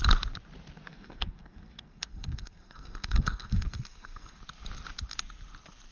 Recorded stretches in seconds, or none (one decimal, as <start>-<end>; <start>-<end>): 0.0-0.9; 4.4-5.9